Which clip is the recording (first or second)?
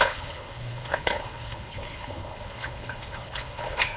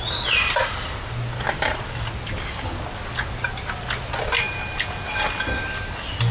second